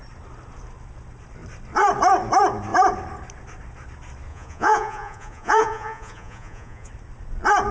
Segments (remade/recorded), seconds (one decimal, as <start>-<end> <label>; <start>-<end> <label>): 0.0-4.3 recorded; 4.3-6.9 remade; 6.9-7.7 recorded